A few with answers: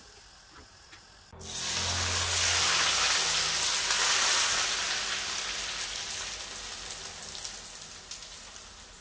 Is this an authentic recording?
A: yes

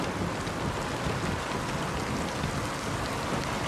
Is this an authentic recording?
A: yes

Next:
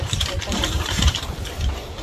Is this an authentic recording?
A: no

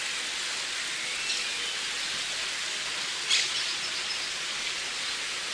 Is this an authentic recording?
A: yes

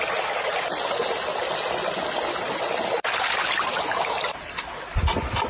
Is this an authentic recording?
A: yes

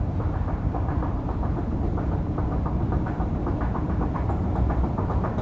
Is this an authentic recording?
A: no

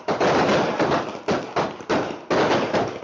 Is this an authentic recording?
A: yes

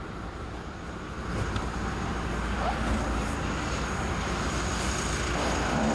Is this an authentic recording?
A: no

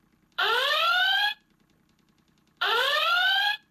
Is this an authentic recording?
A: no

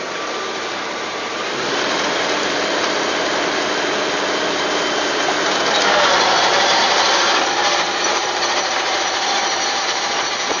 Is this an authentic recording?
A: no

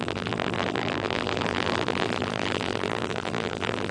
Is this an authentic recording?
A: no